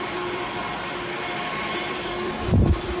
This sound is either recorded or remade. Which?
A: remade